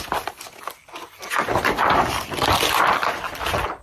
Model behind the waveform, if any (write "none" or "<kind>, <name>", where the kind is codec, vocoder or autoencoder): none